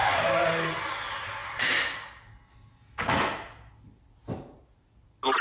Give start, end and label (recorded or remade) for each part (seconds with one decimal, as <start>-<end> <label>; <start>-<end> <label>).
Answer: 0.0-5.4 recorded